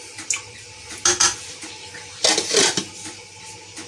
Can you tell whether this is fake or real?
real